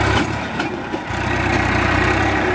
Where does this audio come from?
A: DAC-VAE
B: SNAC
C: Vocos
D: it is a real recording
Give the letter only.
D